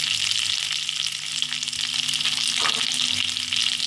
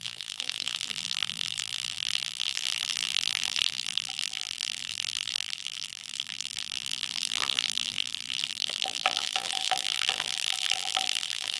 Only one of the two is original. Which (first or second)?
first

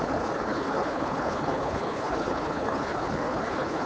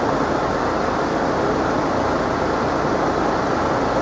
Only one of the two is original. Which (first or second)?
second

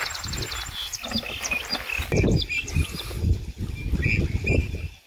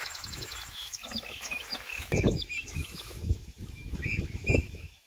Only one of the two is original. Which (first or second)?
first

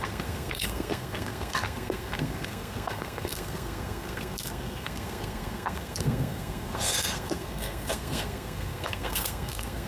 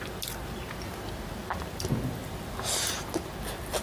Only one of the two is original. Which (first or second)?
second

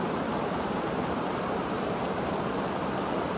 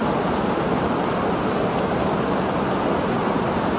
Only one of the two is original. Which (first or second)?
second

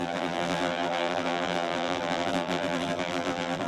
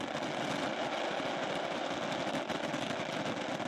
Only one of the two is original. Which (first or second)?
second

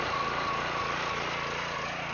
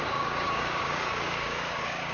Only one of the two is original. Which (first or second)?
first